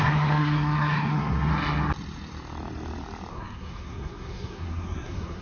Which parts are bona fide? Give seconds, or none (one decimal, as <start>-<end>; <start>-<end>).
1.5-3.3